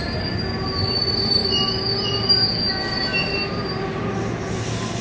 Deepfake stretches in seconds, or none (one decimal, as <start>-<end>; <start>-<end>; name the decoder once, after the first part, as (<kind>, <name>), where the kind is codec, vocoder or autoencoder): none